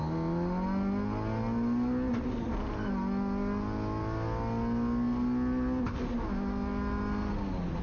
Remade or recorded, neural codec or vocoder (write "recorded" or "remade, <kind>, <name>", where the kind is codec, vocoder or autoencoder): recorded